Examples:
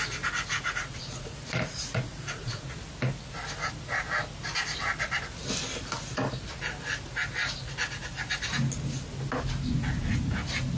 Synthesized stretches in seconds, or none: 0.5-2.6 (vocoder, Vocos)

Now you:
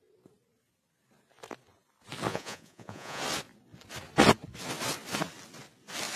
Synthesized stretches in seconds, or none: 2.3-3.2 (vocoder, Vocos)

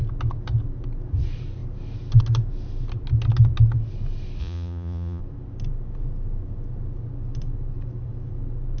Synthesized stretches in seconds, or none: 4.4-5.2 (vocoder, Vocos)